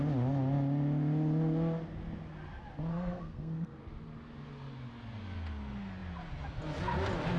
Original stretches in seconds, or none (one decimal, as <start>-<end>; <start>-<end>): 0.0-2.9; 3.8-7.4

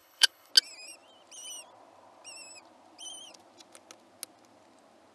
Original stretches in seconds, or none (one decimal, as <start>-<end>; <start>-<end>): 0.5-5.1

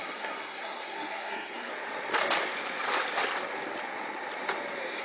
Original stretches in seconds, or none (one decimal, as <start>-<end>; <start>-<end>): 1.7-5.0

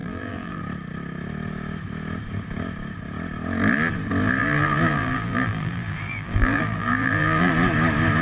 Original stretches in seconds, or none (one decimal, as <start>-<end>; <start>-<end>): 0.6-4.4; 7.5-8.2

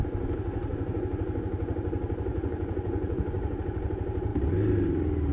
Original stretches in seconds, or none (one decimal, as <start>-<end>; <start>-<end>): 0.0-0.7; 1.2-2.3; 3.6-5.3

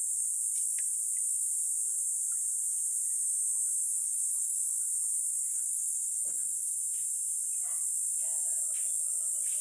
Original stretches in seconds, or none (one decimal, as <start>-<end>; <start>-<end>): 0.0-3.9; 4.7-5.5; 6.8-9.6